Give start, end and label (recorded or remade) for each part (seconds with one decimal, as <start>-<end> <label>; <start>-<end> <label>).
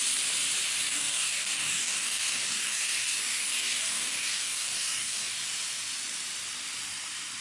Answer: 0.0-0.9 recorded; 0.9-5.3 remade; 5.3-7.4 recorded